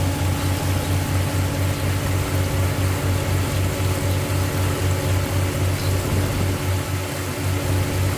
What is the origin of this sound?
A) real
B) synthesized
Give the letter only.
A